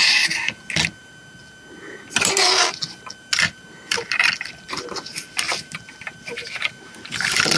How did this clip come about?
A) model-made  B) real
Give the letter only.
B